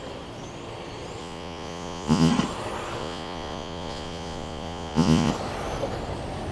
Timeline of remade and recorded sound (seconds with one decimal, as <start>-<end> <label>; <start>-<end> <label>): 0.0-1.2 recorded; 1.2-2.3 remade; 2.3-3.0 recorded; 3.0-5.3 remade; 5.3-6.5 recorded